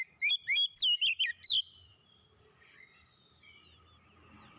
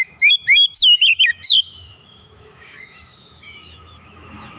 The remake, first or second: second